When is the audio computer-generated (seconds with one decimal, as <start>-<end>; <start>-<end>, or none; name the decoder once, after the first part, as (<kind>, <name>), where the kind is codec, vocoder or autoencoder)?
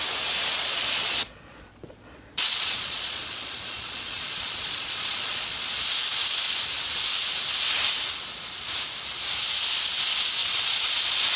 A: 0.5-5.6 (vocoder, Vocos); 10.4-11.0